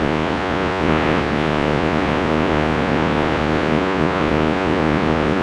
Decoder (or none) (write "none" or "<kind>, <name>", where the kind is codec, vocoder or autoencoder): vocoder, Vocos